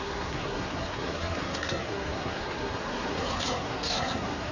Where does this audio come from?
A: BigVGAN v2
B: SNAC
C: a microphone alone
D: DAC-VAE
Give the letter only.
B